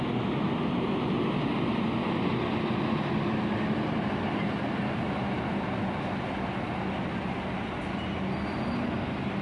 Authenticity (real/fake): real